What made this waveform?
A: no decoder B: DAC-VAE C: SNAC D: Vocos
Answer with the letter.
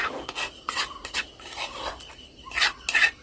A